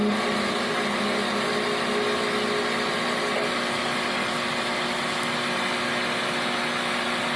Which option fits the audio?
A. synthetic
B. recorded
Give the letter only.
B